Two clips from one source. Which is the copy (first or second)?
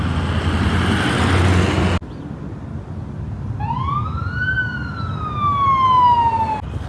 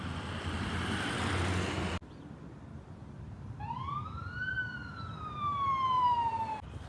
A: second